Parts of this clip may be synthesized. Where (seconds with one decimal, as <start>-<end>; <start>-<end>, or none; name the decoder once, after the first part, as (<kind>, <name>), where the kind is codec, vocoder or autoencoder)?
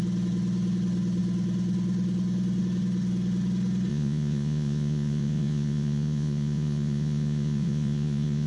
3.9-8.5 (vocoder, Vocos)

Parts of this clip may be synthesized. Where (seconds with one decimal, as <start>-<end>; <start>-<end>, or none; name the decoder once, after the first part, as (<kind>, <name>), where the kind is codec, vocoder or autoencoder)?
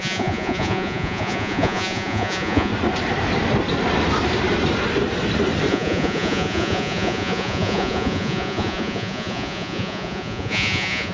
0.0-2.7 (vocoder, Vocos); 5.7-11.1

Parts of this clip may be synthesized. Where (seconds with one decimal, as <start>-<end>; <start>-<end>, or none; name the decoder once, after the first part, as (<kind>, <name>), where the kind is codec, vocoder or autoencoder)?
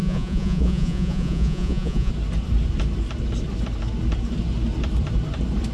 0.0-2.1 (vocoder, Vocos)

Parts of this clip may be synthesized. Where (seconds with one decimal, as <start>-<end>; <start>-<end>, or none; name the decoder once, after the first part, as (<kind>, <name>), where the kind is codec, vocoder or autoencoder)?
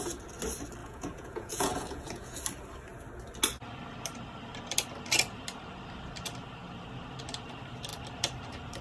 0.8-2.4 (vocoder, Vocos)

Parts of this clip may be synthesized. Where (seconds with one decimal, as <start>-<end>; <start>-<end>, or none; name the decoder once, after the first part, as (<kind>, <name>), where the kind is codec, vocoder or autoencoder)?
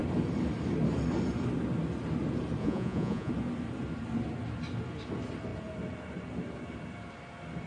2.6-3.3 (vocoder, Vocos)